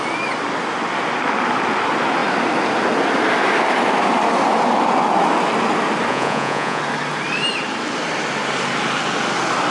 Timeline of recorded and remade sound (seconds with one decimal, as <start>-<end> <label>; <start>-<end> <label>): 0.0-6.1 recorded; 6.1-6.8 remade; 6.8-9.7 recorded